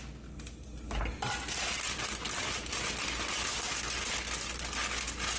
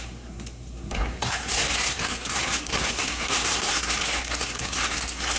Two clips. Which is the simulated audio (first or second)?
second